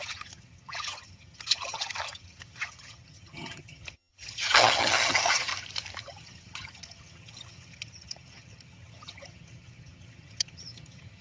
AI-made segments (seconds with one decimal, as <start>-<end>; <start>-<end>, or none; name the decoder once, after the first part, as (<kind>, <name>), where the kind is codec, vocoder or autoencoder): 0.0-5.5 (vocoder, HiFi-GAN); 6.0-11.2